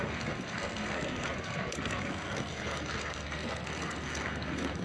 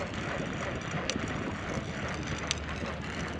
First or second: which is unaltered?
second